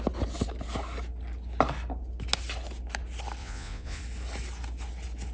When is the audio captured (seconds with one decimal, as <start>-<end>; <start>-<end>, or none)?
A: 0.0-3.4; 4.0-5.3

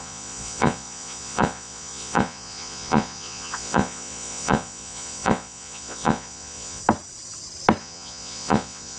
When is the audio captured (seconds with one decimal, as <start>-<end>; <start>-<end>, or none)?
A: 6.8-7.8